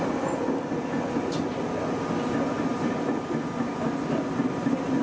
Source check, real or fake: real